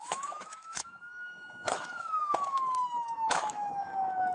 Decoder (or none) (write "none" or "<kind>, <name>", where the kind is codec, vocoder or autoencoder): autoencoder, DAC-VAE